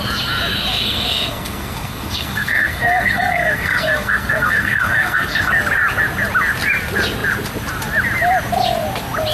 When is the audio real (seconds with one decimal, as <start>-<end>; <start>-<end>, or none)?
0.0-0.7; 5.5-9.3